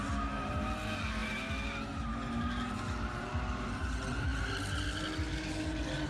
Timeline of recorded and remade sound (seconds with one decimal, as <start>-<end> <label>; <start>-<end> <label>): 0.0-6.1 recorded